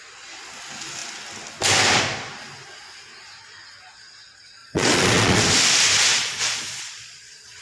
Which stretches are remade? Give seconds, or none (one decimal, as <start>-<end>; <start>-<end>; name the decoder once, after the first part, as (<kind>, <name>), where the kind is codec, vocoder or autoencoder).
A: 4.6-5.4 (vocoder, Vocos); 6.1-7.6